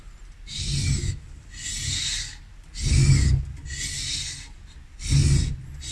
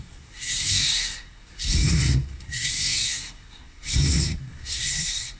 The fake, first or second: second